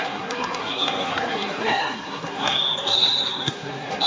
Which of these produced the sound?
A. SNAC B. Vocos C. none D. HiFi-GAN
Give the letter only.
A